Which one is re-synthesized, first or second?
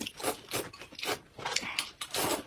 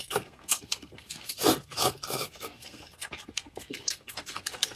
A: second